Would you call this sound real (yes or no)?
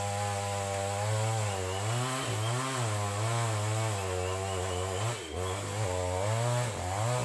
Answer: yes